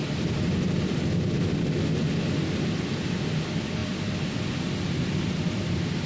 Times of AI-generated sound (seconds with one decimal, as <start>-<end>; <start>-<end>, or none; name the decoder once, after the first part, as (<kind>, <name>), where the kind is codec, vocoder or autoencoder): none